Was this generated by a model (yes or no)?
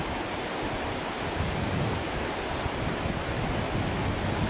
no